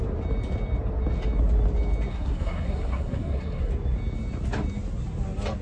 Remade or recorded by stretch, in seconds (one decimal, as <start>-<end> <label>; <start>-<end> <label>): 0.0-2.1 recorded; 2.1-3.7 remade; 3.7-5.6 recorded